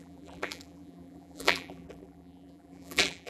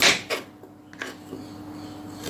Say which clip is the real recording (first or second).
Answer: second